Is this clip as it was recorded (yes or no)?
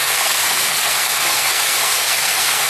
no